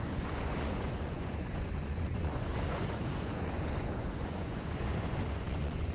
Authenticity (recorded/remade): remade